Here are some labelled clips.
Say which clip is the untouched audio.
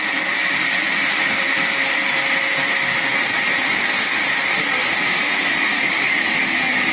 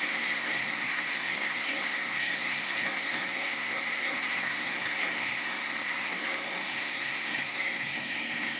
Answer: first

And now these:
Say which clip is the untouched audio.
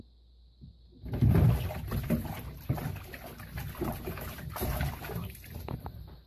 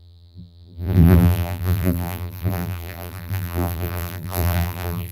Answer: first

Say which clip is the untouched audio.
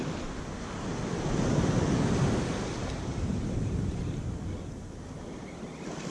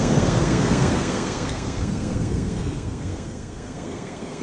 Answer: first